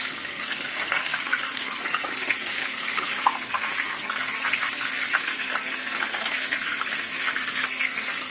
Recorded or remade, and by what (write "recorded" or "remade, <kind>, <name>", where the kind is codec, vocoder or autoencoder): remade, codec, SNAC